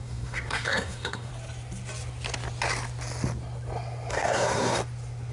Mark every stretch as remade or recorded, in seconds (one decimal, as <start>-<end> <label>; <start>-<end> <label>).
0.0-1.3 remade; 1.3-4.1 recorded; 4.1-4.8 remade; 4.8-5.3 recorded